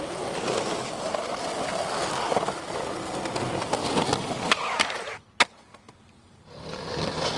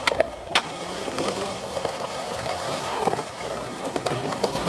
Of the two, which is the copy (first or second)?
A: second